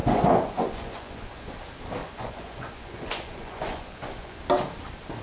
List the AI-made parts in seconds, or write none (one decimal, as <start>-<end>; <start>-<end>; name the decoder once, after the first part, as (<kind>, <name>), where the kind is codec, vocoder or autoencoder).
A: 0.0-1.5 (vocoder, Vocos); 2.0-4.4